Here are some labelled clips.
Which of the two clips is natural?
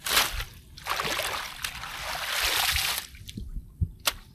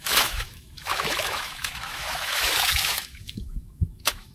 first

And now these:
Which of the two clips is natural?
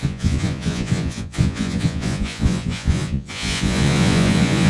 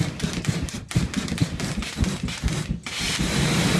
second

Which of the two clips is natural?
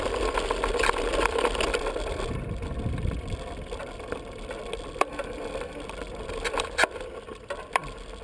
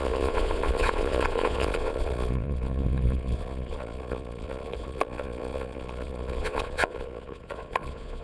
first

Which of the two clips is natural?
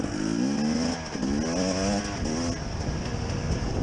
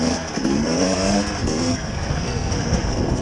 first